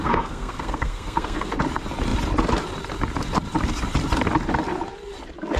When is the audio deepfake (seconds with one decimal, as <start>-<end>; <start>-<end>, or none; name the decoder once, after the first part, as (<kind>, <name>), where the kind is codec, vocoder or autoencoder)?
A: 0.0-1.5 (codec, SNAC)